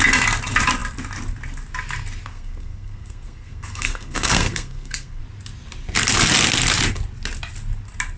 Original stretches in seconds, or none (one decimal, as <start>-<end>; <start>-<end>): 0.0-2.3; 5.2-8.2